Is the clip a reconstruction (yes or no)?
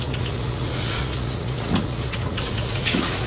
yes